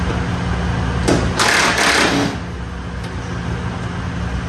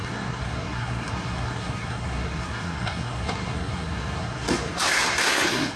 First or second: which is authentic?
first